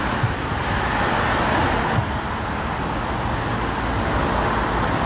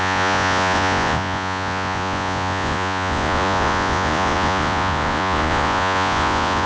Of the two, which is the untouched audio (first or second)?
first